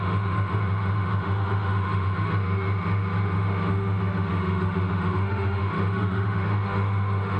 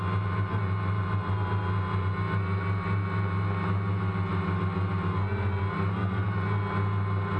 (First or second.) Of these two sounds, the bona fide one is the second